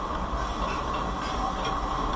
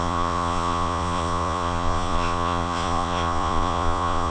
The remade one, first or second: second